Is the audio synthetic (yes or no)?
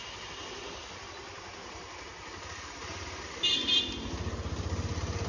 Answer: no